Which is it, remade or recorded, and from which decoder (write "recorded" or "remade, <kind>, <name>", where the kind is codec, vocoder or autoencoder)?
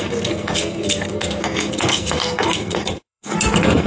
remade, codec, SNAC